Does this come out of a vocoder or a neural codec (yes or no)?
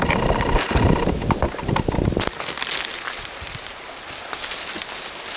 no